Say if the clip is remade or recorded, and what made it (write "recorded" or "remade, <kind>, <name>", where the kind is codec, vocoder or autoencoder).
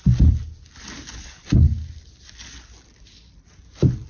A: recorded